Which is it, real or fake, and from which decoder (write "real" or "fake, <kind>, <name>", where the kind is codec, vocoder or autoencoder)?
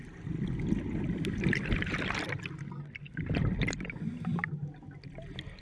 real